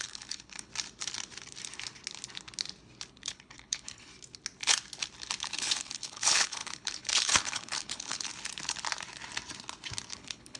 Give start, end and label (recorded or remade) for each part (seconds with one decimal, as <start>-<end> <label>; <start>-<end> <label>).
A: 0.0-0.7 remade; 0.7-3.1 recorded; 3.1-4.1 remade; 4.1-5.4 recorded; 5.4-8.3 remade; 8.3-10.1 recorded; 10.1-10.6 remade